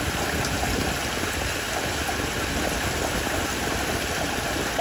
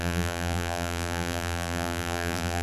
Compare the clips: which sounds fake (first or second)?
second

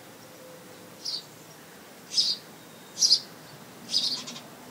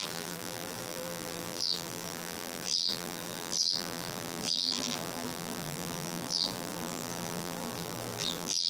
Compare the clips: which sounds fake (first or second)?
second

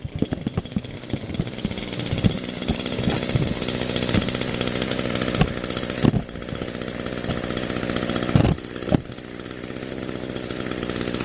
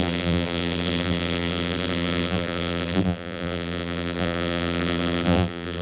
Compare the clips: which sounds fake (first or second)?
second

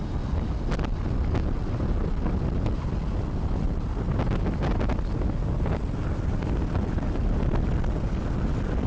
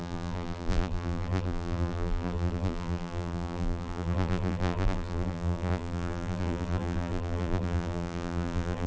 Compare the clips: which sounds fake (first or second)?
second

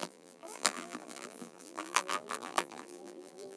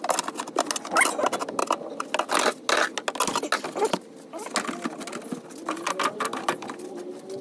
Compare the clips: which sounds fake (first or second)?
first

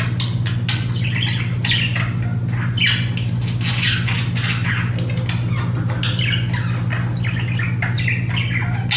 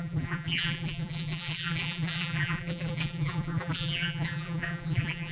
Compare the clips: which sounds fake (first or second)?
second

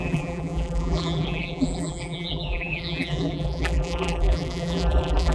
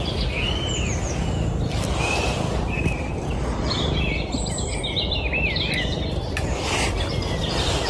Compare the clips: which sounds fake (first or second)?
first